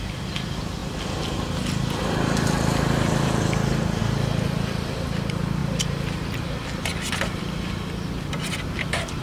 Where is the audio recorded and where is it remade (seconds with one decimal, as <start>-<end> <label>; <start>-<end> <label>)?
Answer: 0.0-9.2 recorded